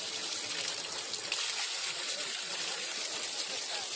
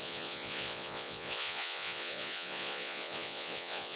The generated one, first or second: second